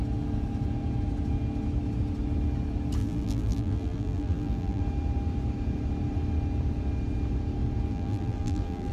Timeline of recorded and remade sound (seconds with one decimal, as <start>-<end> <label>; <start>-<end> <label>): 0.0-3.0 recorded; 3.0-4.8 remade; 4.8-7.9 recorded; 7.9-8.9 remade